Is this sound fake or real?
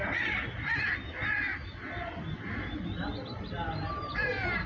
real